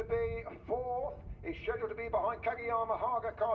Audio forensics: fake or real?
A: real